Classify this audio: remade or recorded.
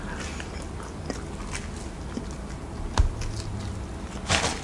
recorded